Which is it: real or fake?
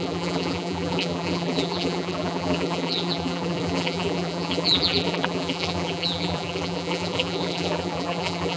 fake